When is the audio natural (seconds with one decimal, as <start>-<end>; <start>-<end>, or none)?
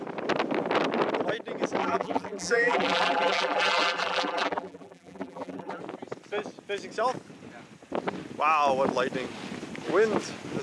0.0-1.8; 5.8-10.6